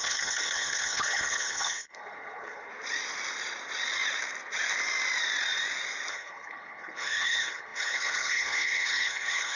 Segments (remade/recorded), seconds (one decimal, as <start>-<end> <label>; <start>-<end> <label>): 0.0-2.7 remade; 2.7-6.1 recorded; 6.1-9.6 remade